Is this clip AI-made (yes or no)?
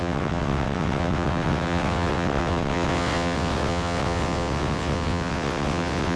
yes